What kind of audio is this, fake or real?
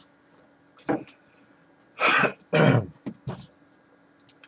real